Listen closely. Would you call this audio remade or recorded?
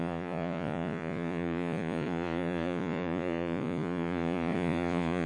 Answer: remade